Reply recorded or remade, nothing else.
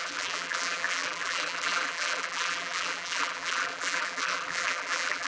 remade